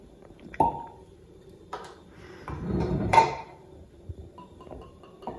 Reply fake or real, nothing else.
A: fake